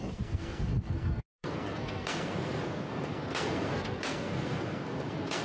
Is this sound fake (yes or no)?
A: yes